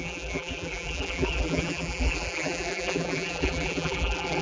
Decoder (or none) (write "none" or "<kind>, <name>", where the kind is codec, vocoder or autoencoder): vocoder, BigVGAN v2